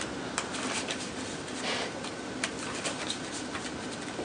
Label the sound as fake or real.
real